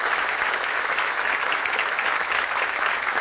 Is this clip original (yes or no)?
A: no